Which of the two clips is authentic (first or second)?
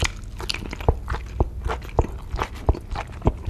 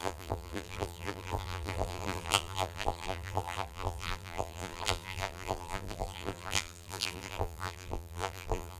first